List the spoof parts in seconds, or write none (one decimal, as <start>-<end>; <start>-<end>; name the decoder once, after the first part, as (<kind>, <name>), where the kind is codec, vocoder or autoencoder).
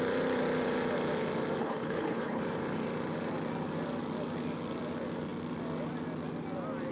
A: 1.6-2.4 (codec, HILCodec)